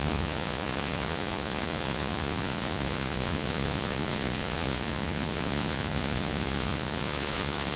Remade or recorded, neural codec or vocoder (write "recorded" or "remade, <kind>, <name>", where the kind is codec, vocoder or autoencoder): remade, vocoder, Vocos